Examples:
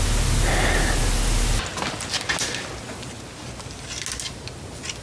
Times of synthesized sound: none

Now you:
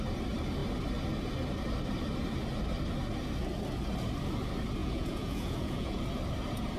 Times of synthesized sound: 4.8-6.0 (vocoder, Vocos)

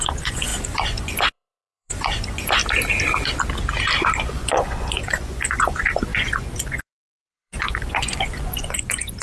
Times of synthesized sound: 0.0-2.6 (vocoder, Vocos); 4.2-9.2